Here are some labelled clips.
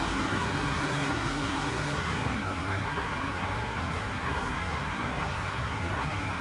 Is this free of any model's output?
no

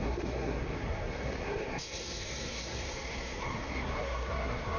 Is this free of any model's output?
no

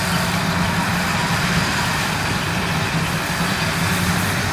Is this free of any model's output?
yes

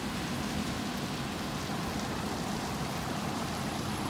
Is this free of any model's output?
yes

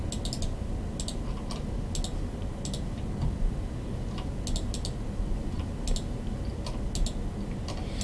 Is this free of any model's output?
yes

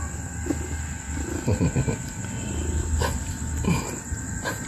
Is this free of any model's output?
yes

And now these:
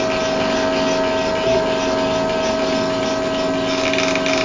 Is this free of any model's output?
yes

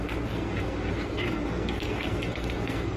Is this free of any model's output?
no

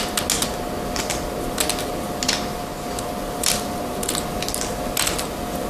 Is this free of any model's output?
yes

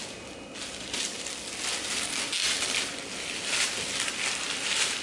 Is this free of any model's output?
yes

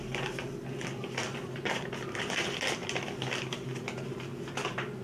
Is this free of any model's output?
yes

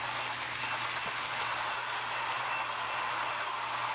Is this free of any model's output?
yes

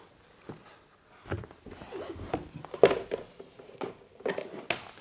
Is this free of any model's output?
yes